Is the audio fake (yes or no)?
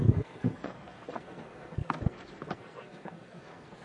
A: yes